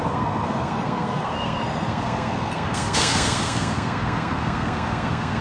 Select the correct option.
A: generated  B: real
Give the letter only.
A